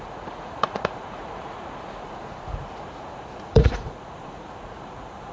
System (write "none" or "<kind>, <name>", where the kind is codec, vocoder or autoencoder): vocoder, Vocos